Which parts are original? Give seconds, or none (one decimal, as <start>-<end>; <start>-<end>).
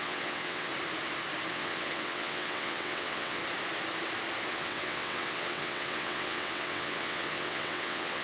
0.7-1.5; 3.4-4.5